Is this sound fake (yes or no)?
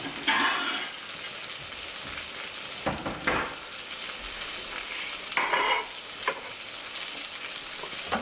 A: no